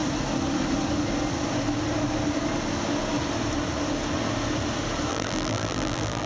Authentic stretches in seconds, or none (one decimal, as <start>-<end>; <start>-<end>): 0.0-5.1